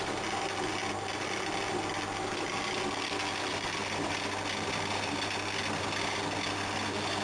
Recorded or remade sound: recorded